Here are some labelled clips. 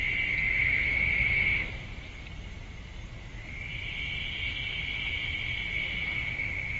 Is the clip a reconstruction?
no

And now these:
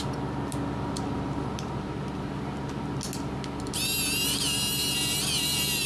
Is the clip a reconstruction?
no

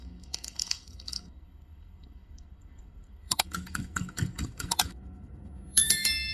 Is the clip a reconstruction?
yes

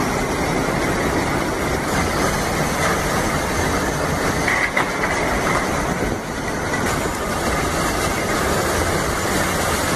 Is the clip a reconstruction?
no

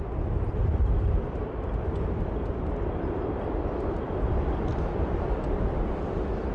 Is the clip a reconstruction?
no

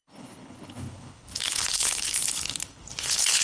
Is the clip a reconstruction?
yes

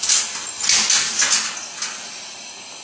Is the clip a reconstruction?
no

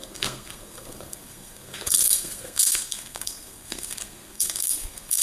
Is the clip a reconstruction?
yes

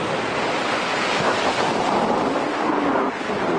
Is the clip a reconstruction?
no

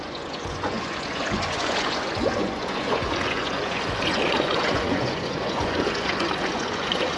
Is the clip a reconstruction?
yes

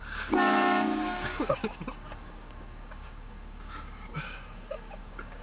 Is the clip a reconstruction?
yes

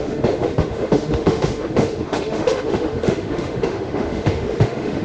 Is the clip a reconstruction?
yes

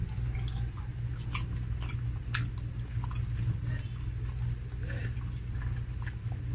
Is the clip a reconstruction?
no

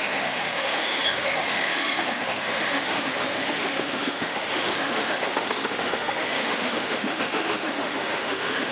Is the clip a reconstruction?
yes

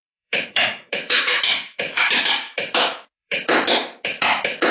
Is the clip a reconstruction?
yes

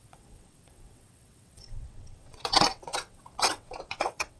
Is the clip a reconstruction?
yes